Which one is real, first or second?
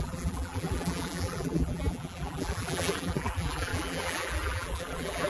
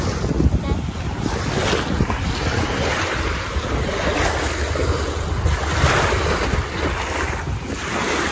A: second